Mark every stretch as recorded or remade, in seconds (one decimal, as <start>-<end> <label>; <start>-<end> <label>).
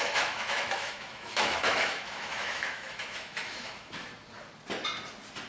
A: 0.0-4.1 remade; 4.1-5.5 recorded